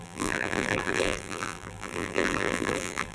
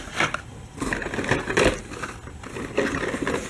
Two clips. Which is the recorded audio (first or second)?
second